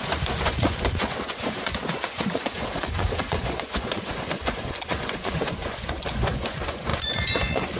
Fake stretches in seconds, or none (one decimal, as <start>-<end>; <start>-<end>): 0.0-7.8